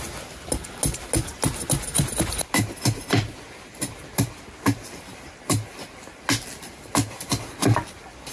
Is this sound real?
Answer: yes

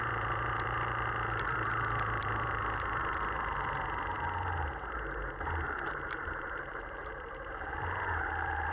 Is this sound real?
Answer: no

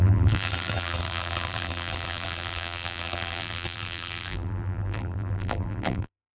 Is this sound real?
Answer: no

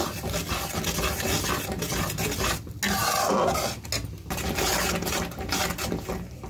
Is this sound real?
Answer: yes